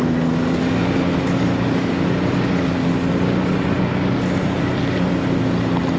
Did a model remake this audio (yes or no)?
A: no